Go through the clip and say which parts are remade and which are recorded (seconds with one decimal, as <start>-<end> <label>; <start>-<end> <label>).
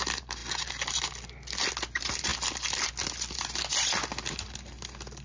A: 0.0-5.2 recorded